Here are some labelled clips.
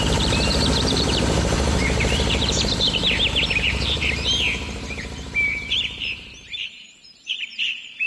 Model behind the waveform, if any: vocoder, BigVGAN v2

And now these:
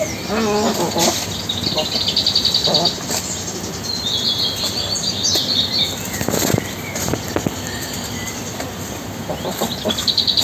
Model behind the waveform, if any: none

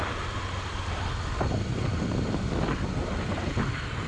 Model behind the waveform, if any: none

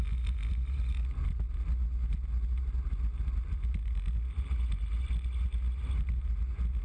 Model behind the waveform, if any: none